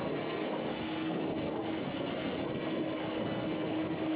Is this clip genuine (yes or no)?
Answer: no